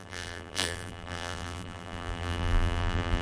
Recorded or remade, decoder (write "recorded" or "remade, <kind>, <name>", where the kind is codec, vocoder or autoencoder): remade, vocoder, BigVGAN v2